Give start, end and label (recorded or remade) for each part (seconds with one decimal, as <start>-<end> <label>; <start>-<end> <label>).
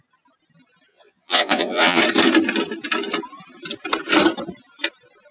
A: 0.0-0.9 recorded; 0.9-2.0 remade; 2.0-5.3 recorded